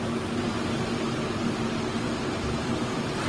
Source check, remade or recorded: recorded